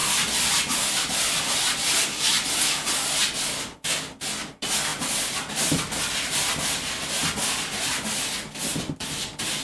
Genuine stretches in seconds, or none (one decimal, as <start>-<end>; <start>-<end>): 2.3-4.9; 6.6-9.6